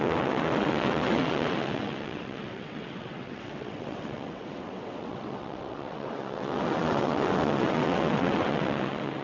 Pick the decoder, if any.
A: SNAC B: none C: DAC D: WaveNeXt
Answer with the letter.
D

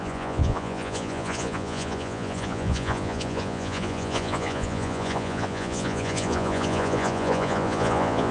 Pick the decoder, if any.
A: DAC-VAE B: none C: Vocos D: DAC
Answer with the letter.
C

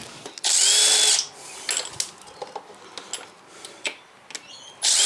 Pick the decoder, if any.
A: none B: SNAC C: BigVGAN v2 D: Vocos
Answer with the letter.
A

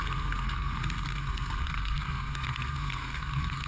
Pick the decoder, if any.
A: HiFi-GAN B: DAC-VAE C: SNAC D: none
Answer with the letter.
C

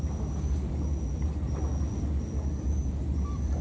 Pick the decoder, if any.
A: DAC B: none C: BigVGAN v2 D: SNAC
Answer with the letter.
B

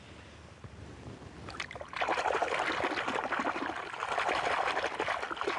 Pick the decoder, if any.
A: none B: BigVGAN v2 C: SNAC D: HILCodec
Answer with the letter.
A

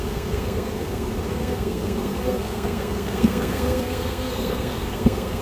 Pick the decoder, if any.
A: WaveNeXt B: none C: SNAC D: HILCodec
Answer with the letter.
C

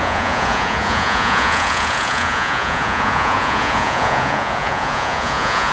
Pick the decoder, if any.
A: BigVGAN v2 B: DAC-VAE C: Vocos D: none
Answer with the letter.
C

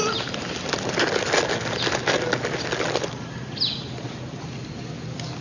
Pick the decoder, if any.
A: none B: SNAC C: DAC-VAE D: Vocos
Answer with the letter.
A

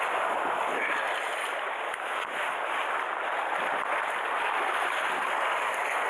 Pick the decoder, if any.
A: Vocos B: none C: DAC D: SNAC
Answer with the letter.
B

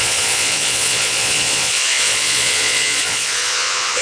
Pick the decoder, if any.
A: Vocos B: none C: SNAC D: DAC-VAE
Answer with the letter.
A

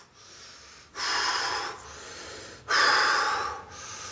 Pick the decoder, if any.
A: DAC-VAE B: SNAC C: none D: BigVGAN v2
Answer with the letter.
C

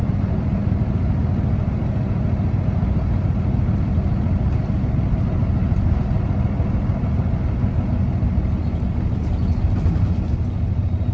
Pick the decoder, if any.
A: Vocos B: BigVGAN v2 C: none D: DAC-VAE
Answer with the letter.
C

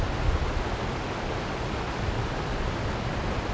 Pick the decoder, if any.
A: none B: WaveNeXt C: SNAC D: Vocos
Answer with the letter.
A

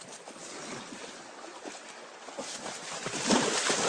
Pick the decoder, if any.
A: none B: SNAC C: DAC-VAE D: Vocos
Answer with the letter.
A